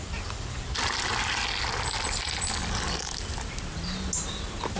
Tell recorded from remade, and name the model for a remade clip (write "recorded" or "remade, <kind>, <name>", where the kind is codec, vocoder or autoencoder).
recorded